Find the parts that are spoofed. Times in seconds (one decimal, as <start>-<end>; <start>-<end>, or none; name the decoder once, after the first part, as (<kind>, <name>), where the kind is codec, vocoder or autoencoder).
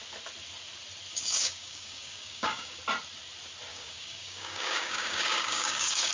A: 1.1-2.8 (codec, DAC); 3.7-6.1